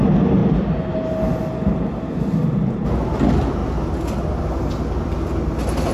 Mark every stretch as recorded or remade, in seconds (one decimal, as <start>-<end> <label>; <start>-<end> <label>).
0.0-5.9 recorded